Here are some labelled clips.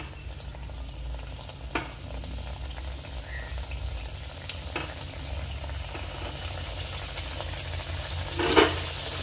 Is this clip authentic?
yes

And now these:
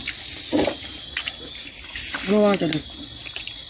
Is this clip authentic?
yes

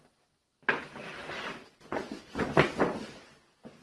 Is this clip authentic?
yes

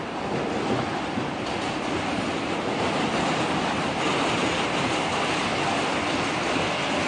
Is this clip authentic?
yes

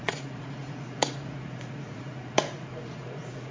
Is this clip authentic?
no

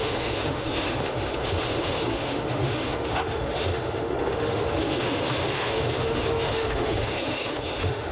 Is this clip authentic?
no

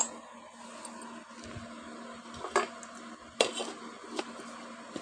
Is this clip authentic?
yes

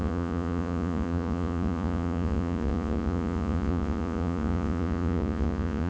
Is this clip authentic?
no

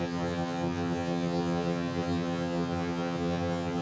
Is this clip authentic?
no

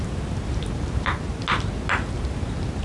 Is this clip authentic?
yes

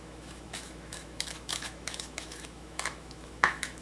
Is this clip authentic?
no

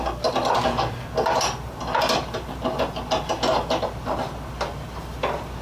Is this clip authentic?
yes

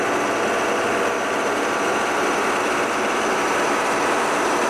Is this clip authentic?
yes